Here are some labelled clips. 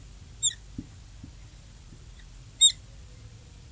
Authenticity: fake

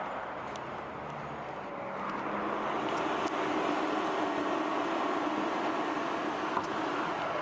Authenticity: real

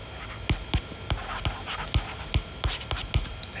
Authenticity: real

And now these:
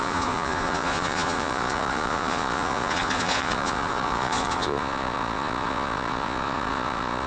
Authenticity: fake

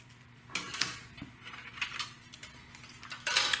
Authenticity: real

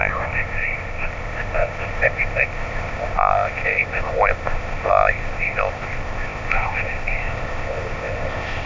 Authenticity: fake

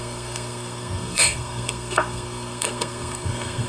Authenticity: fake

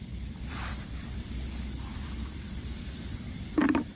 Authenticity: fake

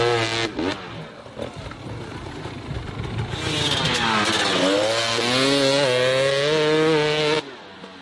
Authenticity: real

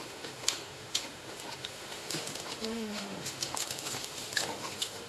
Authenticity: fake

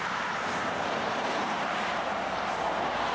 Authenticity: fake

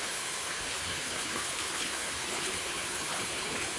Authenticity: fake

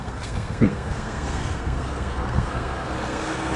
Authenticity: fake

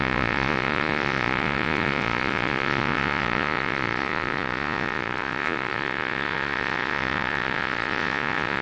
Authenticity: fake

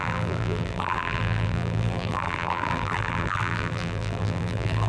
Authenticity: fake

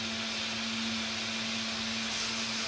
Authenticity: real